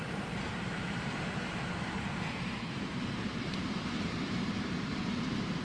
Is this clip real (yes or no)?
no